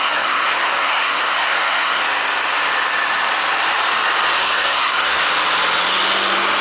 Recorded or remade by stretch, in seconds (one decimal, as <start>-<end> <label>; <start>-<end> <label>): 0.0-2.0 remade; 2.0-4.4 recorded; 4.4-5.2 remade; 5.2-6.6 recorded